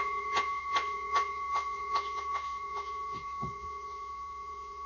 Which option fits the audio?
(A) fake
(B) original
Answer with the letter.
A